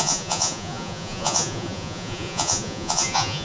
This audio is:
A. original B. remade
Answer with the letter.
B